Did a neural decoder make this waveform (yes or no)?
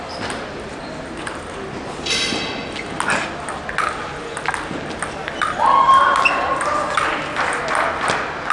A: no